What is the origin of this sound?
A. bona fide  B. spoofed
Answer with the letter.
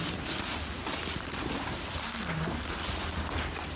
B